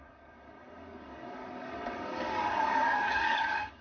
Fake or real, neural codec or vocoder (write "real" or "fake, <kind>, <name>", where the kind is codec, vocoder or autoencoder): fake, codec, DAC